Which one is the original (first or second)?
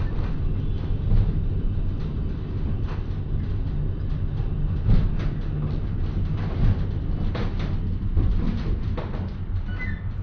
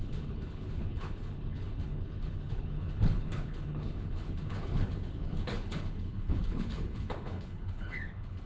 first